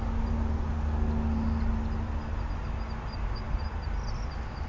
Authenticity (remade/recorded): recorded